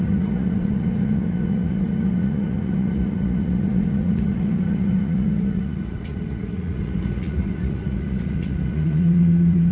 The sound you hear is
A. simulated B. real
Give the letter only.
A